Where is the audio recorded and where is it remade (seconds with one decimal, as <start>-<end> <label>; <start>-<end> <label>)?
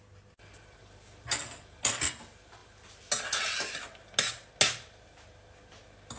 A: 0.0-6.2 recorded